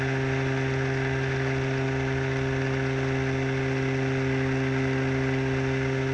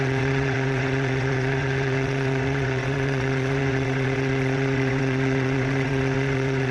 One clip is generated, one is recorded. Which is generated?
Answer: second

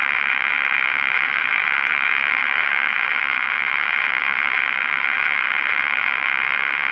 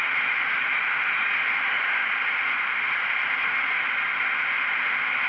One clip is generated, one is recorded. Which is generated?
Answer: first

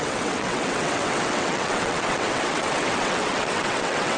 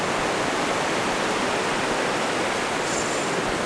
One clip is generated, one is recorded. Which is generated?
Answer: first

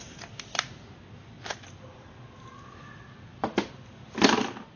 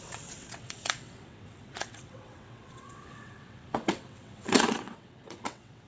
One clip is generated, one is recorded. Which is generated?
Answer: second